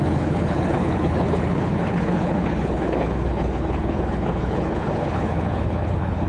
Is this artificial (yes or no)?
yes